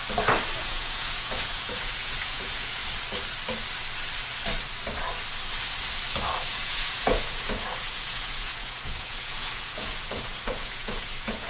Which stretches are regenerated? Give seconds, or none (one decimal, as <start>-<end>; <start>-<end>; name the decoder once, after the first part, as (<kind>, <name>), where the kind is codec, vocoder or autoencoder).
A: 0.6-2.8 (vocoder, Vocos); 6.5-11.5